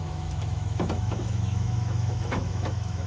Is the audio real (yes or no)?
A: no